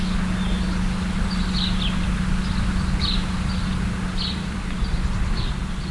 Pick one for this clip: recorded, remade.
recorded